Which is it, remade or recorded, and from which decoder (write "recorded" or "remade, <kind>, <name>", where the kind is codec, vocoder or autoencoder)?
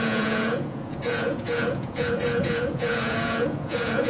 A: remade, vocoder, Vocos